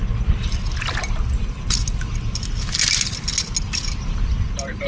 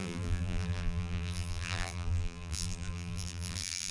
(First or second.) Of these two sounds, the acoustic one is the first